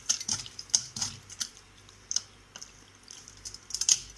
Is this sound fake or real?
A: real